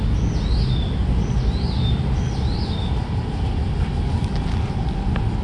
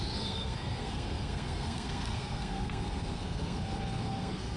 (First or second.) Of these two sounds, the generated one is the second